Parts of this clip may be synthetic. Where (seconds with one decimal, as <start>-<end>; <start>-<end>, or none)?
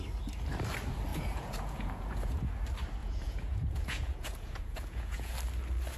1.1-2.5; 3.0-5.3